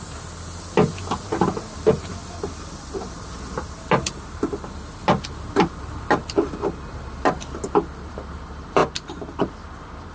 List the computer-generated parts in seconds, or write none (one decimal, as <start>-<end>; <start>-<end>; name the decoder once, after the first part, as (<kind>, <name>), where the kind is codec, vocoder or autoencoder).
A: none